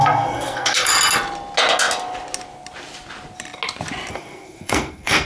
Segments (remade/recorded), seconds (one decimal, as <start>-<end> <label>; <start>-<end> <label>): 0.0-0.9 remade; 0.9-4.1 recorded; 4.1-5.3 remade